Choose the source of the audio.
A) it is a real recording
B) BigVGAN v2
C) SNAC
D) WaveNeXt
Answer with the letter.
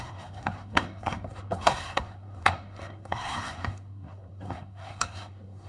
C